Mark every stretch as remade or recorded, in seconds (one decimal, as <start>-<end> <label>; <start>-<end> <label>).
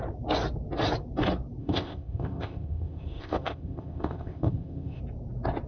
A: 0.0-1.6 recorded; 1.6-5.0 remade; 5.0-5.7 recorded